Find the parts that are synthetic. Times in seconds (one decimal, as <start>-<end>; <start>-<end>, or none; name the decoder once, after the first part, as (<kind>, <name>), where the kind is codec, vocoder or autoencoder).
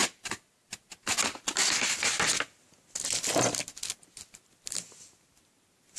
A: none